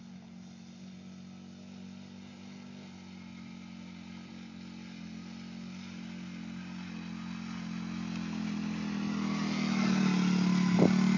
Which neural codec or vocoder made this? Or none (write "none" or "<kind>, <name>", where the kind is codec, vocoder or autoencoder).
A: none